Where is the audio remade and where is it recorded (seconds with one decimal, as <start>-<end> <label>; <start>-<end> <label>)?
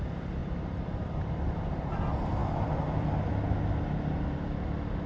0.0-0.4 recorded; 0.4-1.2 remade; 1.2-2.4 recorded; 2.4-3.3 remade; 3.3-5.1 recorded